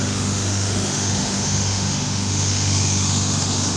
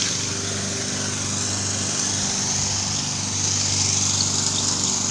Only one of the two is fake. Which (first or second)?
first